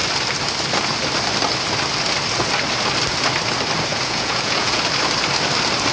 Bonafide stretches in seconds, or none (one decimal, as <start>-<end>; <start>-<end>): 0.0-3.9; 4.8-5.9

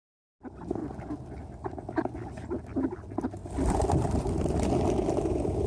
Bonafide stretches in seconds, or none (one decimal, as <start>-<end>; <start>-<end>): 0.0-5.7

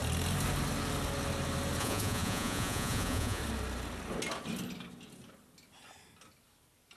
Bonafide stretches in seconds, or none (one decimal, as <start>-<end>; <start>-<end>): 0.0-1.8; 3.4-7.0

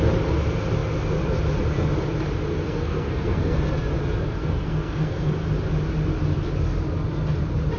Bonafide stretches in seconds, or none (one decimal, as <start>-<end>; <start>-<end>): 0.0-2.5; 3.6-4.4; 5.3-7.8

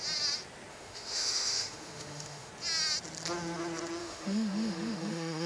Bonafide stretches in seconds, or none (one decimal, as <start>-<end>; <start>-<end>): 0.0-0.7; 2.5-4.0

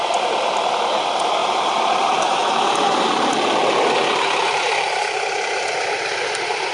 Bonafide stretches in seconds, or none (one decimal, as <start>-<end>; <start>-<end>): 0.0-1.4; 2.0-2.4; 6.3-6.7

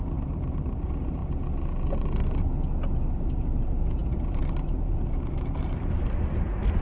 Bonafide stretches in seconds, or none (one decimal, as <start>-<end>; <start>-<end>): 1.2-3.1